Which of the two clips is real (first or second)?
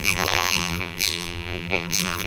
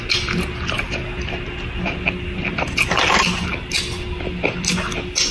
second